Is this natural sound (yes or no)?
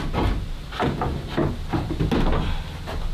yes